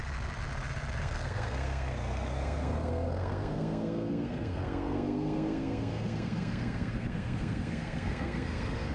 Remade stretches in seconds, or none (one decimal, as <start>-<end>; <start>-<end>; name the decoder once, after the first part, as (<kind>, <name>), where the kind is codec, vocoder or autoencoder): 1.0-8.9 (codec, SNAC)